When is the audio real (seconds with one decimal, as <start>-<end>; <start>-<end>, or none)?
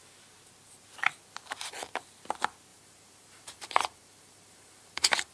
0.0-2.7